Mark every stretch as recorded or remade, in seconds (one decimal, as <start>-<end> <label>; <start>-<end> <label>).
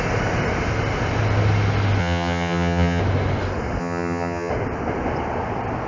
0.0-2.0 recorded; 2.0-3.0 remade; 3.0-3.8 recorded; 3.8-4.5 remade; 4.5-5.9 recorded